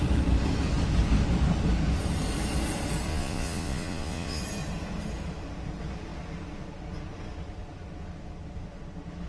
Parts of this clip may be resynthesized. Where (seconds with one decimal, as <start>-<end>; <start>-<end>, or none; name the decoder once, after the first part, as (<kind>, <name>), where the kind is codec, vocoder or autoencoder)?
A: 3.1-4.4 (vocoder, Vocos)